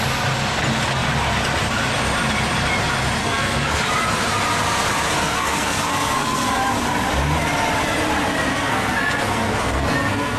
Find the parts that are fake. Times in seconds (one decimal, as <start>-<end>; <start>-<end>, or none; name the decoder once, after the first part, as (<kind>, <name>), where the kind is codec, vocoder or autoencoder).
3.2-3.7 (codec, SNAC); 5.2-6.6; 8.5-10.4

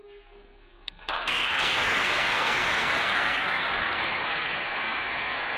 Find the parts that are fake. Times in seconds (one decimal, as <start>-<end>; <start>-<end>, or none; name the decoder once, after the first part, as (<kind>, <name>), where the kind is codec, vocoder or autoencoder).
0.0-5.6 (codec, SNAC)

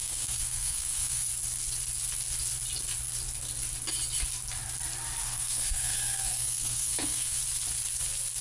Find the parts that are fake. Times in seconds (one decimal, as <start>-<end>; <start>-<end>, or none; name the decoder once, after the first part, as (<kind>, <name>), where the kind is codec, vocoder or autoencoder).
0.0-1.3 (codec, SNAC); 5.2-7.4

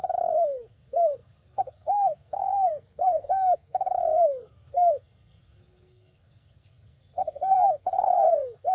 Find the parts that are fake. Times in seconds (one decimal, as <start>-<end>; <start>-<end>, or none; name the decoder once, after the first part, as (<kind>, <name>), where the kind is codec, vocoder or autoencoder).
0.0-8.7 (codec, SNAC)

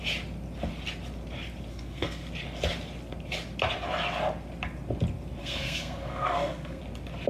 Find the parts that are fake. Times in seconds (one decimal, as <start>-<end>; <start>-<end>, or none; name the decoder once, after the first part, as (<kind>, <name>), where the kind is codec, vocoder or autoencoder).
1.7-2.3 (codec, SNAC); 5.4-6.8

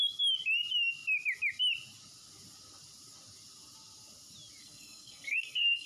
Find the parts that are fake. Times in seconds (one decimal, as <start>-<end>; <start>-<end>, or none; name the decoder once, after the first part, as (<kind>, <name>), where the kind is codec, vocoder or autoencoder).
4.6-5.9 (codec, SNAC)

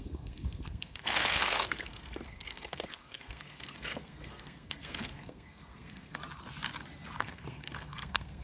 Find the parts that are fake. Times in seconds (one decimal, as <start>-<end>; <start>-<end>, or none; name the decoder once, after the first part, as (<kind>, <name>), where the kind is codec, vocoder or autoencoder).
0.0-6.2 (codec, SNAC); 7.2-8.4

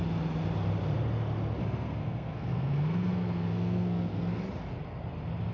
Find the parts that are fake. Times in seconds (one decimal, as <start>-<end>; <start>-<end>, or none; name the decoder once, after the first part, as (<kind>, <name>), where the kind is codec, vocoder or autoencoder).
1.6-4.4 (codec, SNAC)